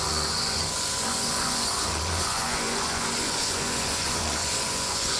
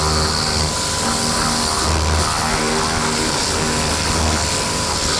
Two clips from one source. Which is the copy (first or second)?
first